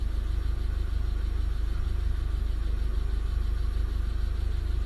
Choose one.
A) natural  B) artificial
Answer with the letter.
A